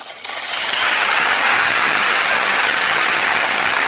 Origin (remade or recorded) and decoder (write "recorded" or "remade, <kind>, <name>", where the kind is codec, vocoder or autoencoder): remade, vocoder, HiFi-GAN